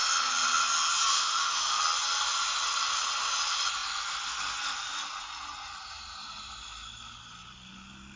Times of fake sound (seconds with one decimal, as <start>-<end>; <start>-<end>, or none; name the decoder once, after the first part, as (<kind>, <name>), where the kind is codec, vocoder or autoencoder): 1.1-1.8 (autoencoder, DAC-VAE)